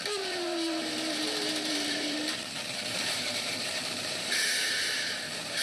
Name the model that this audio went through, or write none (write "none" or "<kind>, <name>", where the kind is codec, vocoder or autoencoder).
vocoder, BigVGAN v2